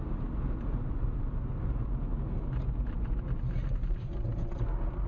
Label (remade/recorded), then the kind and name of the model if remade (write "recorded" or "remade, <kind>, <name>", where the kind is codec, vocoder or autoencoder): recorded